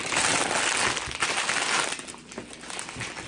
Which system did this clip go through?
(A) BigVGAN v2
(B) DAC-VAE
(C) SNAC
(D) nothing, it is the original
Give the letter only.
D